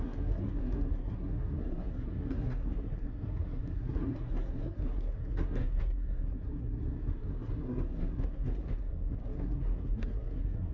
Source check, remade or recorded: remade